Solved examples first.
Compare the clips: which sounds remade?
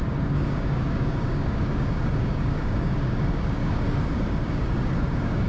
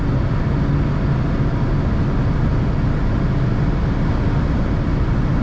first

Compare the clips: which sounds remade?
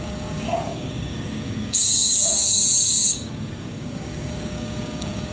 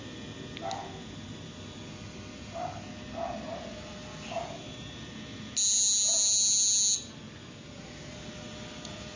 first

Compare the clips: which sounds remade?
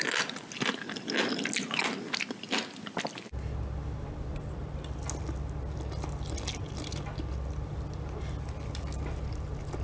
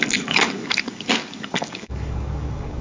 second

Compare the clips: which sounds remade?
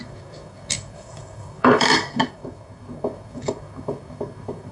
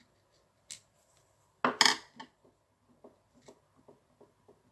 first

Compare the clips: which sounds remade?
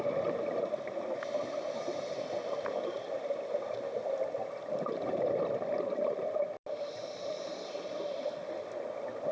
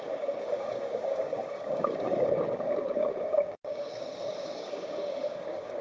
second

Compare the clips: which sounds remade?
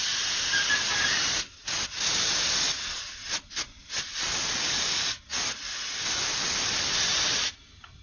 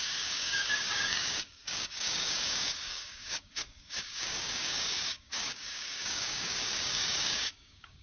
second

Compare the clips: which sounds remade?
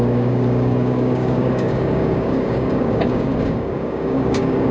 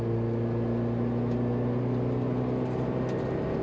first